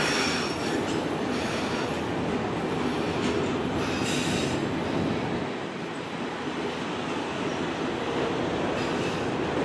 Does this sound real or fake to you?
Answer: real